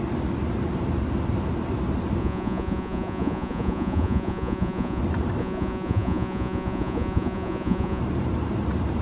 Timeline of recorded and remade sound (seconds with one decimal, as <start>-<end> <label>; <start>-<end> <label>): 0.0-2.2 recorded; 2.2-5.0 remade; 5.0-5.4 recorded; 5.4-8.0 remade; 8.0-9.0 recorded